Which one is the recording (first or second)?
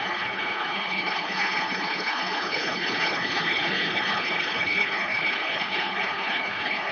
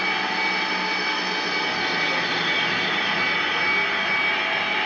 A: second